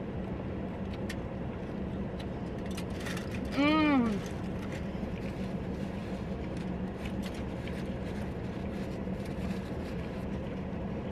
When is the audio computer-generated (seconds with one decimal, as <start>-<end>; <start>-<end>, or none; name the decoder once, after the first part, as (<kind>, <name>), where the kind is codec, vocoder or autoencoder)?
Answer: none